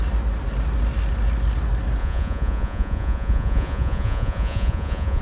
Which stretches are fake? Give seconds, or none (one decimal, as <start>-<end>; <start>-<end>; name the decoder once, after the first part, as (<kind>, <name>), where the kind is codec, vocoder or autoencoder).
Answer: 2.0-5.2 (vocoder, Vocos)